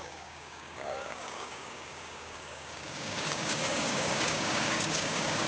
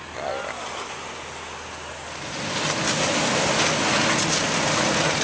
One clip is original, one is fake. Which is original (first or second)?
second